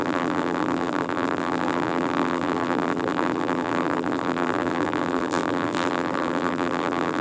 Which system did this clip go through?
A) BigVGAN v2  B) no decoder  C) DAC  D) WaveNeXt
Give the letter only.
A